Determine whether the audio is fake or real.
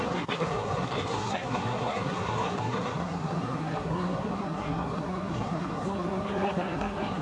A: fake